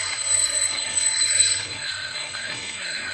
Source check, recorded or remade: remade